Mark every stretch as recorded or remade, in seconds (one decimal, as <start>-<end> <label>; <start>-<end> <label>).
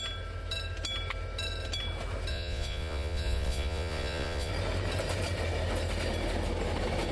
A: 0.0-2.3 recorded; 2.3-4.5 remade; 4.5-7.1 recorded